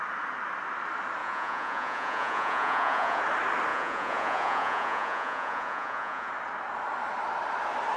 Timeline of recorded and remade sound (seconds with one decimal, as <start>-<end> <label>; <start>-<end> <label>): 0.0-1.2 recorded; 1.2-3.2 remade; 3.2-3.7 recorded; 3.7-6.3 remade; 6.3-8.0 recorded